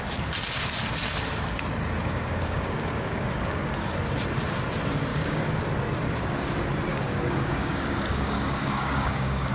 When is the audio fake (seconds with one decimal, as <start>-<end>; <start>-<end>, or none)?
2.0-3.7; 5.1-5.6; 6.9-9.5